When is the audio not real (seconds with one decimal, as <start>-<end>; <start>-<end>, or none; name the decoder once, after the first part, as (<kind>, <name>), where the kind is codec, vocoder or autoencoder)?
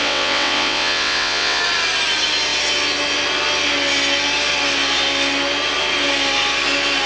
0.0-1.6 (vocoder, WaveNeXt)